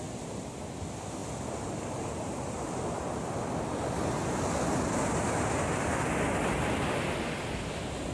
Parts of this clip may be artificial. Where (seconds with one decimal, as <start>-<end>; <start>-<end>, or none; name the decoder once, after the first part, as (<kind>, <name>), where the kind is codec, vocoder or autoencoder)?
none